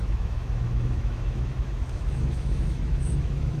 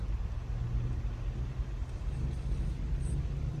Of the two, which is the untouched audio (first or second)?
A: second